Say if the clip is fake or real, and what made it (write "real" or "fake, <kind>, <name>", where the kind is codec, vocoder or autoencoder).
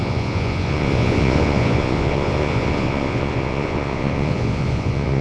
fake, vocoder, Vocos